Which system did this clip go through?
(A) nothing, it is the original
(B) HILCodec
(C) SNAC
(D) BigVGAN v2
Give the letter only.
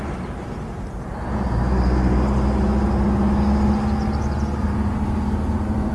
A